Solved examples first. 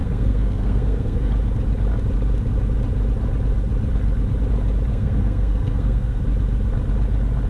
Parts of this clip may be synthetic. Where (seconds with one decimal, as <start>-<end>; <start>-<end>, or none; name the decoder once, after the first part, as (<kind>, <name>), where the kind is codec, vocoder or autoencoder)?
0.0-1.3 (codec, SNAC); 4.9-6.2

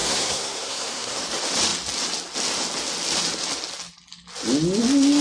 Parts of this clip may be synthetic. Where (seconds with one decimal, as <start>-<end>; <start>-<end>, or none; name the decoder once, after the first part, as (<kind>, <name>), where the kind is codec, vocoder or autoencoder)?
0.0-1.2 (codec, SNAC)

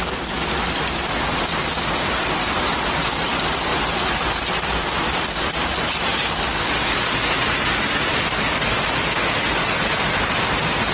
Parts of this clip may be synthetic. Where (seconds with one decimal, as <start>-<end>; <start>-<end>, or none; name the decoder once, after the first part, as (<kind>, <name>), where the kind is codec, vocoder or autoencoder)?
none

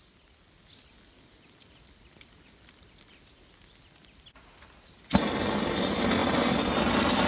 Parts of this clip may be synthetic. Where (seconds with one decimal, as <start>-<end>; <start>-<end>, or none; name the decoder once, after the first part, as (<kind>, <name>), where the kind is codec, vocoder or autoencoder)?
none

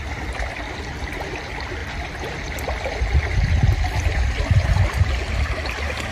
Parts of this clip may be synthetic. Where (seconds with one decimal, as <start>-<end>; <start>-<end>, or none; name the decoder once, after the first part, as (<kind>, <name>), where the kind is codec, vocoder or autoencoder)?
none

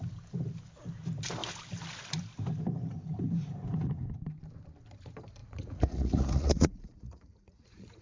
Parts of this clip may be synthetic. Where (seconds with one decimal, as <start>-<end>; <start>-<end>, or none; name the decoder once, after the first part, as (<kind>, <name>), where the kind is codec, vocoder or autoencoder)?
5.4-8.0 (vocoder, Vocos)

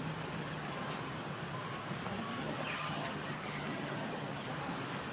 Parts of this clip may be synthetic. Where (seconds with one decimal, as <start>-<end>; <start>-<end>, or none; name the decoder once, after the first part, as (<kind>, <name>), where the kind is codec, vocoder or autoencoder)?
0.4-1.0 (vocoder, HiFi-GAN); 2.4-4.5

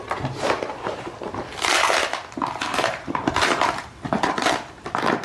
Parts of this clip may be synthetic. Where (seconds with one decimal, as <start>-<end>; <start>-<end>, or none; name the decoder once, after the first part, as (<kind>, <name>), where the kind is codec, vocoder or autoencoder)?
2.7-4.3 (vocoder, BigVGAN v2)